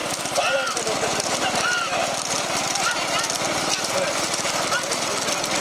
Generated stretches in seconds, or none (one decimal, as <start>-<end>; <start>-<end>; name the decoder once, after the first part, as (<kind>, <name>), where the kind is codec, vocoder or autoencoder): none

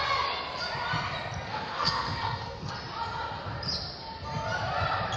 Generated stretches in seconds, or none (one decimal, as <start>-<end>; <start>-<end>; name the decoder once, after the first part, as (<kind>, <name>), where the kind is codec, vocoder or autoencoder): 1.5-2.7 (codec, SNAC)

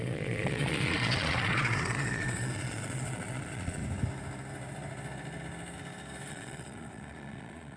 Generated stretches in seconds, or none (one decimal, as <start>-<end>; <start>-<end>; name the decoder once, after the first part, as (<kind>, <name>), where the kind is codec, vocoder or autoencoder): 0.0-3.8 (vocoder, Vocos); 6.3-7.8

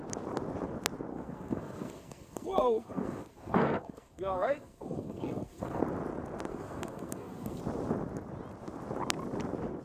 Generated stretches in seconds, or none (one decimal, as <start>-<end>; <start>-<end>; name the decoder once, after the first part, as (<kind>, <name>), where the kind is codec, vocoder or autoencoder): 1.1-5.8 (codec, SNAC); 6.5-7.6

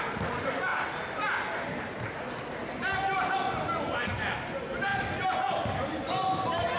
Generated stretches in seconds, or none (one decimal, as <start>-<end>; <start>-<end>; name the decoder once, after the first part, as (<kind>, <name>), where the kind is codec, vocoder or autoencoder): none

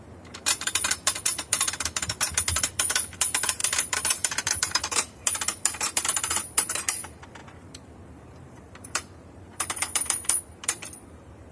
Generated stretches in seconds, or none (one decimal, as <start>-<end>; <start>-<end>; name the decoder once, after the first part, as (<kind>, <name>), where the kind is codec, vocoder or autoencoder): 0.0-11.5 (vocoder, BigVGAN v2)